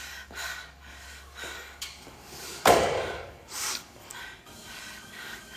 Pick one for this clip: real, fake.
fake